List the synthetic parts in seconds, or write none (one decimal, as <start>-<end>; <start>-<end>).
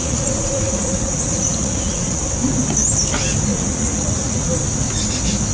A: 0.0-2.2; 3.5-4.5